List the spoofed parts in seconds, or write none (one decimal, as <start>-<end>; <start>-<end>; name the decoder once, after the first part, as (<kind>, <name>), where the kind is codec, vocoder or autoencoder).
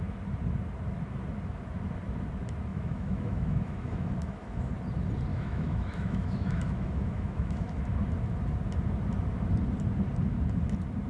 2.7-4.7 (autoencoder, DAC-VAE); 5.3-7.8